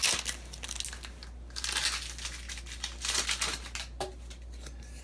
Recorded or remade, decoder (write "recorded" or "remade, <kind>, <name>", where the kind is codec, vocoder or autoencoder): recorded